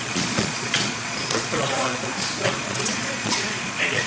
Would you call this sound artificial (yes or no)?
yes